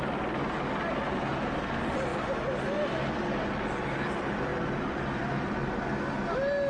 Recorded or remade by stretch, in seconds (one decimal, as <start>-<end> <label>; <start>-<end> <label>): 0.0-4.5 recorded; 4.5-5.3 remade; 5.3-6.7 recorded